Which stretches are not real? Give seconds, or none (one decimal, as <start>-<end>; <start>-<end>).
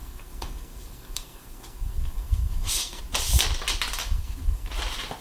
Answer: 0.0-3.0; 4.0-4.7